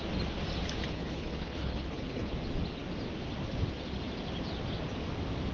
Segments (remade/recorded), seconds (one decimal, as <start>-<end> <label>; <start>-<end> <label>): 0.0-0.9 recorded; 0.9-2.3 remade; 2.3-5.5 recorded